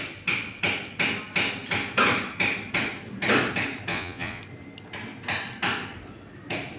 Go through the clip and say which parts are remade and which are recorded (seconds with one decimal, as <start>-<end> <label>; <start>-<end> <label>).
0.0-3.9 recorded; 3.9-4.4 remade; 4.4-6.8 recorded

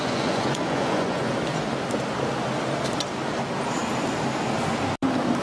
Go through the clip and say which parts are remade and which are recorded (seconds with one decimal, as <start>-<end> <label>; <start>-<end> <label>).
0.0-1.3 remade; 1.3-5.4 recorded

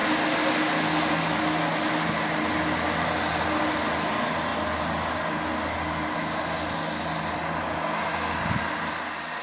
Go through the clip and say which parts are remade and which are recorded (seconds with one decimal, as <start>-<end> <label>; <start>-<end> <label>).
0.0-9.4 recorded